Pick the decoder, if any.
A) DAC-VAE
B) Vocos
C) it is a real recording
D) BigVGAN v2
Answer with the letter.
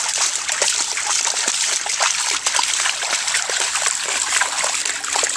D